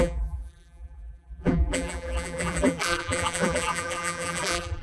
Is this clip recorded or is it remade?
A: remade